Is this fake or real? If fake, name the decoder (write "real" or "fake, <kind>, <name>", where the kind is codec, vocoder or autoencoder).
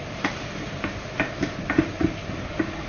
real